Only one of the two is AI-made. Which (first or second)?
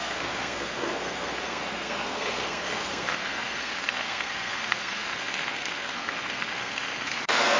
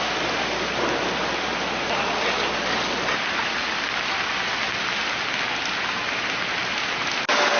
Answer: first